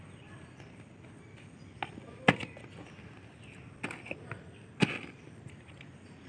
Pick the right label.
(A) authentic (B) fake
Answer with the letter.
A